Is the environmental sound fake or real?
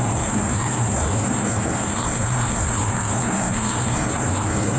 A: fake